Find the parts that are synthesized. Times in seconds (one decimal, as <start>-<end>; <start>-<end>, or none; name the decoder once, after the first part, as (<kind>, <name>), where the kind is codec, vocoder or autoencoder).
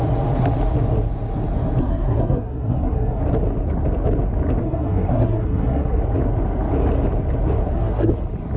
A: 1.8-3.2 (codec, SNAC); 4.6-6.0; 7.6-8.1